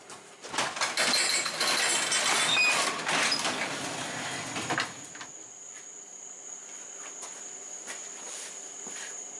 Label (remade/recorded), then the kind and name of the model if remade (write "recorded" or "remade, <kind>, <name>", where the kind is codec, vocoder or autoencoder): recorded